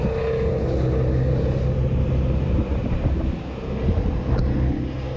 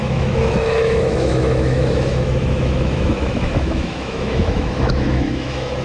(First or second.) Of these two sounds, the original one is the first